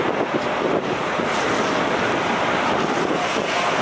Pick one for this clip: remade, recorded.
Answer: recorded